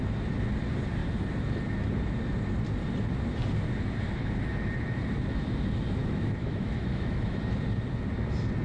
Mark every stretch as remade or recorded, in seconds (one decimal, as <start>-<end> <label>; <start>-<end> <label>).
0.0-6.0 recorded; 6.0-7.3 remade; 7.3-8.6 recorded